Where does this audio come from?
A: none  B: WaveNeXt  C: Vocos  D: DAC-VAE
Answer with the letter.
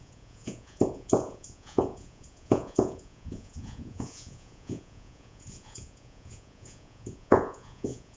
C